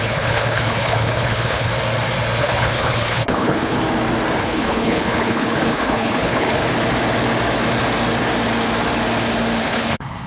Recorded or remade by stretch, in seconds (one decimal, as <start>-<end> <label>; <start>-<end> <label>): 0.0-1.7 remade; 1.7-2.4 recorded; 2.4-3.8 remade; 3.8-4.4 recorded; 4.4-6.6 remade; 6.6-9.6 recorded; 9.6-10.3 remade